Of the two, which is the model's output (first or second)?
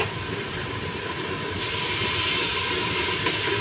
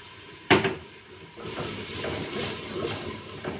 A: second